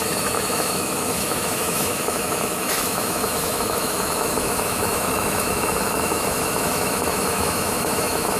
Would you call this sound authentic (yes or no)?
no